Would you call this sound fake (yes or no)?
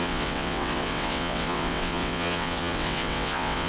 yes